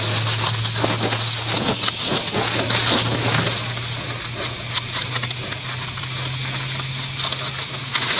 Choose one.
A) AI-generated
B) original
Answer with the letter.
B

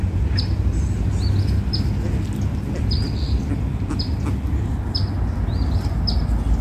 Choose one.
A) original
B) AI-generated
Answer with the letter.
A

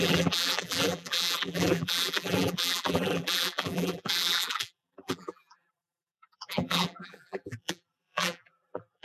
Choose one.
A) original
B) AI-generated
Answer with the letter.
B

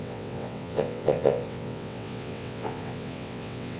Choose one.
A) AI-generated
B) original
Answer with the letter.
A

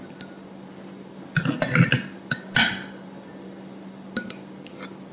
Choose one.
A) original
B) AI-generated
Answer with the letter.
A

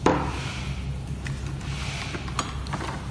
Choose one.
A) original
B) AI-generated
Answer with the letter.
A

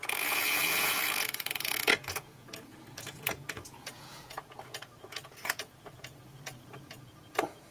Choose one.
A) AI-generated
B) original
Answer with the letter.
A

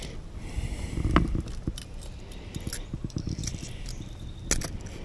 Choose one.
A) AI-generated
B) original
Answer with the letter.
B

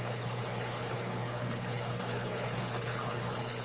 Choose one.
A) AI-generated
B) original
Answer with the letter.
A